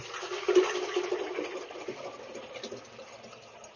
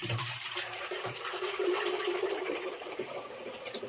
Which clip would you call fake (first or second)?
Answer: second